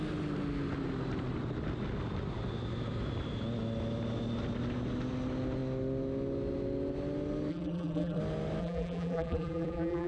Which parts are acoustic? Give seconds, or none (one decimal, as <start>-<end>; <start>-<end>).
0.0-7.5; 8.2-8.6